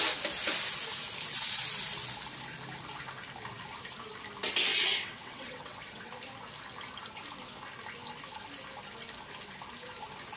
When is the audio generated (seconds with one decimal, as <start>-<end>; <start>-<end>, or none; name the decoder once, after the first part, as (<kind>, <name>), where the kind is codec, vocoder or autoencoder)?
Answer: 4.8-6.1 (vocoder, WaveNeXt)